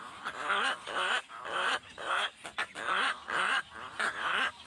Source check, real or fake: real